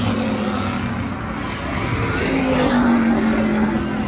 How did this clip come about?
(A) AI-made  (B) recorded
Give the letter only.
B